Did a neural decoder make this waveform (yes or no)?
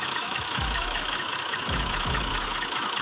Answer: yes